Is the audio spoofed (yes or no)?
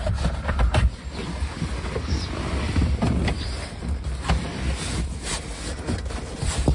no